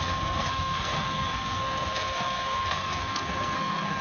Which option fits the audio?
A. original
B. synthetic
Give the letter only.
B